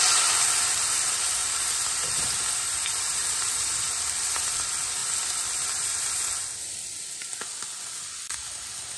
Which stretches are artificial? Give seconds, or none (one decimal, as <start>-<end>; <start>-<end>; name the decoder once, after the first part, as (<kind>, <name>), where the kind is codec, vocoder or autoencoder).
3.2-3.8 (vocoder, BigVGAN v2)